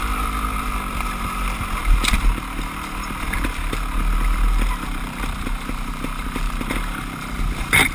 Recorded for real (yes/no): yes